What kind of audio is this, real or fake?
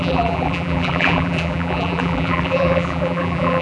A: fake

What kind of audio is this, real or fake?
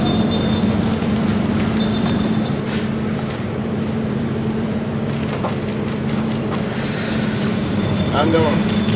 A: fake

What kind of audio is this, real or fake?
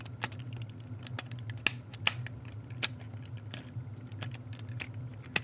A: real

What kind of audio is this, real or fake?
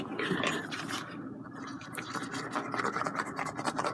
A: real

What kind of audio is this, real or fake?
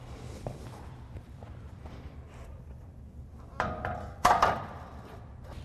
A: fake